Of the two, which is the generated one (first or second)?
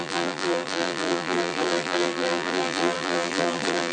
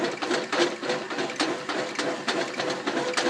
first